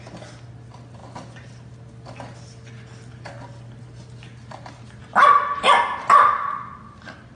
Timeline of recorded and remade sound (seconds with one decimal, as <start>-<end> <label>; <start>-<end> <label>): 0.0-7.3 recorded